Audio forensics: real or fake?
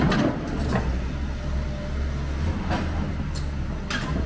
real